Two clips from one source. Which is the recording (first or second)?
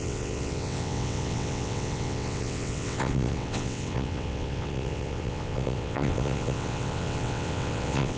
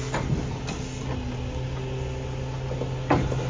second